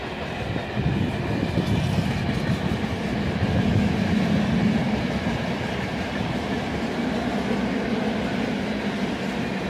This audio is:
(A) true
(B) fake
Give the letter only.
A